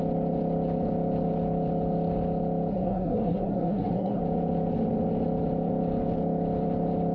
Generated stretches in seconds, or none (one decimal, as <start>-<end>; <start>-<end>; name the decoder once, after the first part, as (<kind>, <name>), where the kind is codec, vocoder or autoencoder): 2.7-4.2 (codec, SNAC)